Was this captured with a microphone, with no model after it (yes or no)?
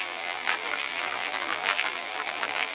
no